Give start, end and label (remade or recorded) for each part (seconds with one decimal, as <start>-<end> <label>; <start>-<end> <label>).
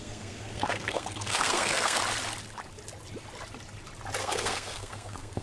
0.0-2.0 remade; 2.0-4.2 recorded; 4.2-5.4 remade